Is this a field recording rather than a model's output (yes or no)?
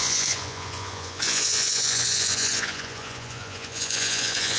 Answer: no